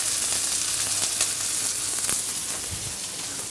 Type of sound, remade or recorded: recorded